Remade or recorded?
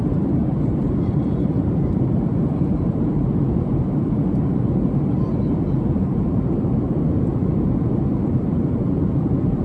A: remade